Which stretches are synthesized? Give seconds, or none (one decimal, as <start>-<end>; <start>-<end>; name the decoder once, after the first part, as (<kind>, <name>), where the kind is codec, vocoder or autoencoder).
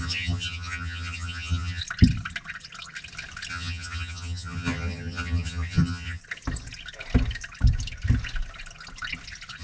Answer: 0.0-1.8 (vocoder, HiFi-GAN); 3.5-6.2